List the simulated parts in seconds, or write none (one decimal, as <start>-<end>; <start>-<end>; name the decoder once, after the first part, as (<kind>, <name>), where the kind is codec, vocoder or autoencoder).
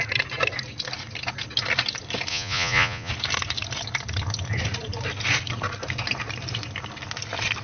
2.3-3.1 (vocoder, Vocos)